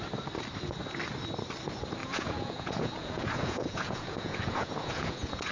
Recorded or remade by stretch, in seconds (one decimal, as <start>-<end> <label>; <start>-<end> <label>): 0.0-2.0 recorded; 2.0-5.5 remade

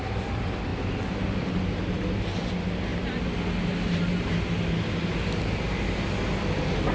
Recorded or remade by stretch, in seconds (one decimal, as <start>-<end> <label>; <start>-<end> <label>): 0.0-0.7 recorded; 0.7-2.5 remade; 2.5-6.9 recorded

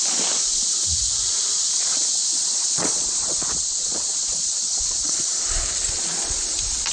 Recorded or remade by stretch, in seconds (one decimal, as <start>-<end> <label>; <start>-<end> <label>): 0.0-2.3 recorded; 2.3-6.4 remade; 6.4-6.9 recorded

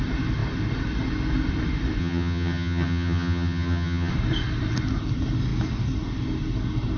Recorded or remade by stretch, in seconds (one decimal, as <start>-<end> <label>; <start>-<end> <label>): 0.0-2.0 recorded; 2.0-4.1 remade; 4.1-7.0 recorded

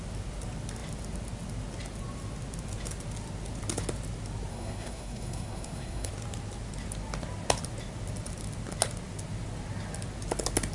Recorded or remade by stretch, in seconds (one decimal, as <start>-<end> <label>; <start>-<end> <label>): 0.0-4.5 recorded; 4.5-6.1 remade; 6.1-10.7 recorded

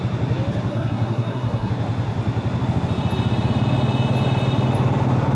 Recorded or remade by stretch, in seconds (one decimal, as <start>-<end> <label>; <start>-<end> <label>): 0.0-0.7 recorded; 0.7-1.7 remade; 1.7-5.3 recorded

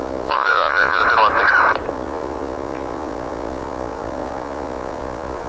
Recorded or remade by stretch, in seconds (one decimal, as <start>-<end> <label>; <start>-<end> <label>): 0.0-1.0 remade; 1.0-1.9 recorded; 1.9-5.5 remade

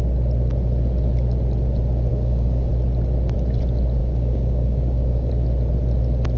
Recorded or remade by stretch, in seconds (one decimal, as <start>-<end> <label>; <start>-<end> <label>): 0.0-2.1 recorded; 2.1-2.7 remade; 2.7-4.0 recorded; 4.0-5.3 remade; 5.3-6.4 recorded